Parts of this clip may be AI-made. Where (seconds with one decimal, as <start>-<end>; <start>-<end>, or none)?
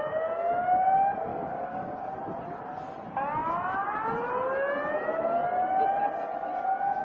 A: 1.3-2.1